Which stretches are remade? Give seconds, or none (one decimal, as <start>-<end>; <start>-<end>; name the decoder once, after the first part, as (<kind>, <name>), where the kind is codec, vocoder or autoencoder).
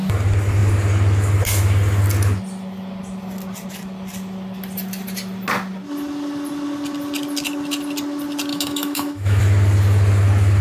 8.5-9.4 (autoencoder, DAC-VAE)